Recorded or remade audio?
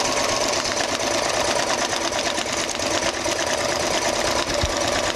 recorded